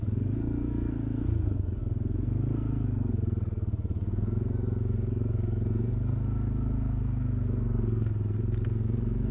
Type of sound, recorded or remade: remade